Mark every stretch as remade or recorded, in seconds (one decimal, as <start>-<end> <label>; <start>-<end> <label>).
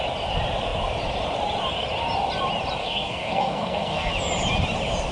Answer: 0.0-2.8 recorded; 2.8-4.1 remade; 4.1-5.1 recorded